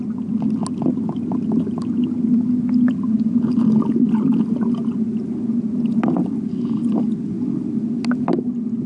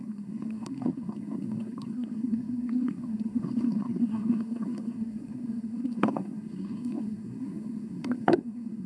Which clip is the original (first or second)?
first